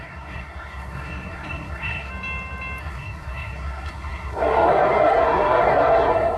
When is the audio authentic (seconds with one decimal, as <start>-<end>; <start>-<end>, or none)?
2.1-2.8